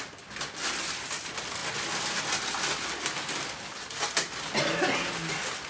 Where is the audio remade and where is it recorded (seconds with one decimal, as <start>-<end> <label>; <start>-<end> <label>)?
0.0-5.7 recorded